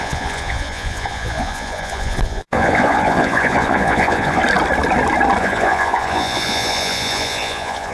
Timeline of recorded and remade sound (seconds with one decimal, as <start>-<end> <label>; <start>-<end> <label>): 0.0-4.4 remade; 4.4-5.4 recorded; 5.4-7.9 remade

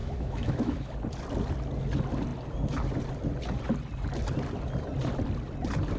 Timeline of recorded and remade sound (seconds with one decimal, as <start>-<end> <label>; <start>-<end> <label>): 0.0-0.9 remade; 0.9-6.0 recorded

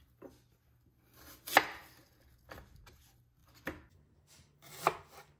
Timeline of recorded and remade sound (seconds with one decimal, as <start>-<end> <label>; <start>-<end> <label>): 0.0-5.4 recorded

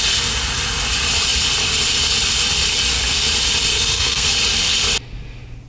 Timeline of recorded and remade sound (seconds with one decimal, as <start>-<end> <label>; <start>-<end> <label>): 0.0-3.7 recorded; 3.7-4.3 remade; 4.3-5.7 recorded

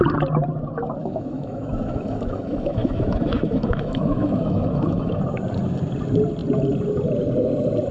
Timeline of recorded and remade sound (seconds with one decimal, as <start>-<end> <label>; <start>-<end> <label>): 0.0-1.0 recorded; 1.0-5.2 remade; 5.2-7.9 recorded

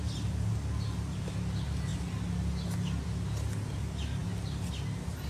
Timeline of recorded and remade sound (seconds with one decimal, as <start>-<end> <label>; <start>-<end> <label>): 0.0-5.3 recorded

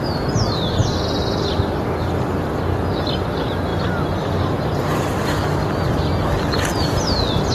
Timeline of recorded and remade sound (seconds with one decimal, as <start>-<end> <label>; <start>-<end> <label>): 0.0-0.8 recorded; 0.8-1.4 remade; 1.4-7.5 recorded

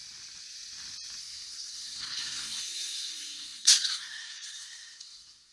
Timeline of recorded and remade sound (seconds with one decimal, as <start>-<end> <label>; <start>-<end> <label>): 0.0-1.2 recorded; 1.2-5.5 remade